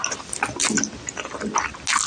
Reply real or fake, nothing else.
real